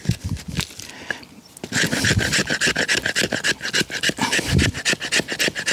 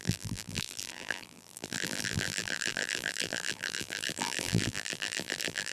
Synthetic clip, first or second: second